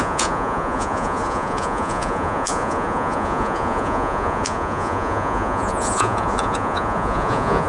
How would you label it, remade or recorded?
remade